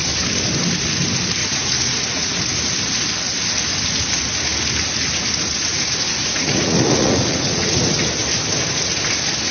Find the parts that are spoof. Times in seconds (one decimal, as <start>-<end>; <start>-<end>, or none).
1.4-2.4; 5.7-8.0